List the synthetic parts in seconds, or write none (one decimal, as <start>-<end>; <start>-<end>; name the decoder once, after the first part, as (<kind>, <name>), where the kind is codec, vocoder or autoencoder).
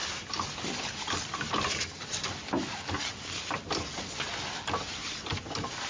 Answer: none